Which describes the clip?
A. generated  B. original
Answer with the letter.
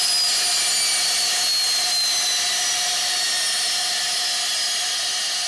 B